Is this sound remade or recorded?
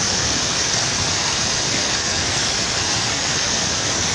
remade